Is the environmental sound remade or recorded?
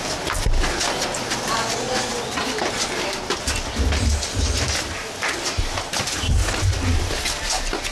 recorded